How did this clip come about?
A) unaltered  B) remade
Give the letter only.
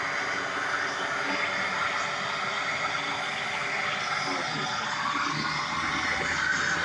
A